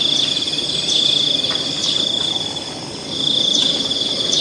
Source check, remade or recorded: recorded